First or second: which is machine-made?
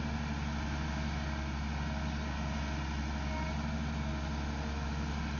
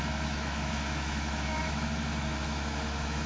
second